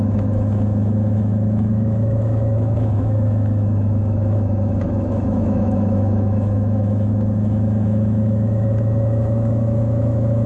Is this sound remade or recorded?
remade